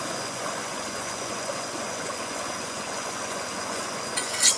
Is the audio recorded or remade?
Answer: remade